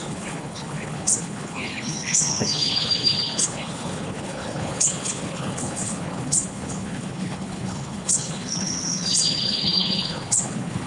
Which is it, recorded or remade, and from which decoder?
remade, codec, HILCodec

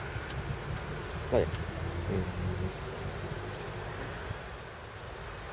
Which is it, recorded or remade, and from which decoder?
recorded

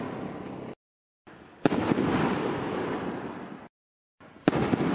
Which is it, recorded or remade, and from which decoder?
recorded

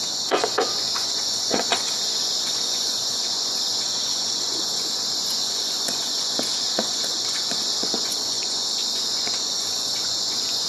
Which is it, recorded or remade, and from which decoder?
remade, vocoder, Vocos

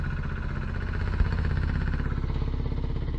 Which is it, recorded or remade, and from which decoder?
recorded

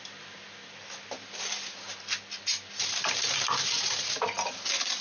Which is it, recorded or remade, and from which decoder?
recorded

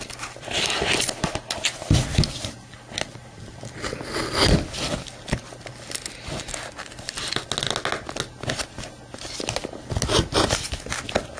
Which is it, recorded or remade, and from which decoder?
recorded